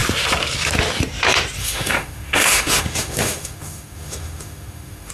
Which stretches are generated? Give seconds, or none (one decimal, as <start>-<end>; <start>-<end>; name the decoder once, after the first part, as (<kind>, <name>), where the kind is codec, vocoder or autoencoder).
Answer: 1.6-5.1 (autoencoder, DAC-VAE)